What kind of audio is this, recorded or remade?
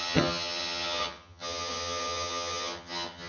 remade